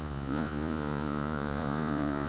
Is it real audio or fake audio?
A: fake